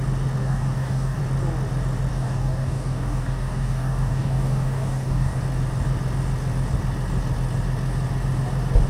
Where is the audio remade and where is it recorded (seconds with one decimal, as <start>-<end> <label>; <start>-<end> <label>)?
0.0-0.4 recorded; 0.4-1.2 remade; 1.2-2.1 recorded; 2.1-5.4 remade; 5.4-8.9 recorded